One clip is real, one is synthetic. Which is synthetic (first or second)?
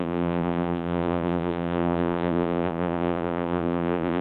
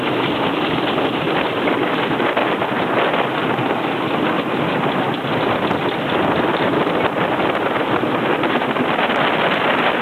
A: first